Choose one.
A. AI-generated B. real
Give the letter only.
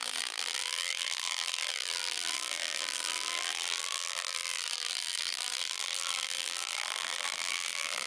A